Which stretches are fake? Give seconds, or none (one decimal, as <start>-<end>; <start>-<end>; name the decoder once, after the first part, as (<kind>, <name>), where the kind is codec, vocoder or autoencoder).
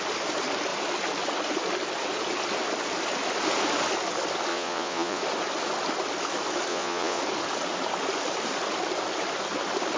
4.5-5.2 (vocoder, Vocos); 6.7-7.2